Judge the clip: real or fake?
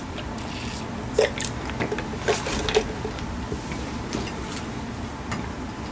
real